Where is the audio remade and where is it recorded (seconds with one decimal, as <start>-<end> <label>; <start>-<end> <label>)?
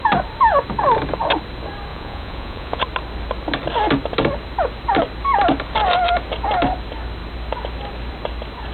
0.0-1.9 recorded; 1.9-2.8 remade; 2.8-8.7 recorded